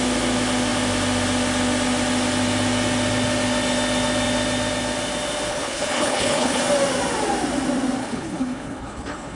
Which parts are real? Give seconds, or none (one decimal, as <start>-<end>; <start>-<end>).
0.0-5.5; 6.6-8.0